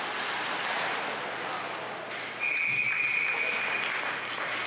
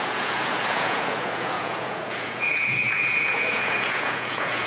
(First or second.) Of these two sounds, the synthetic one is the second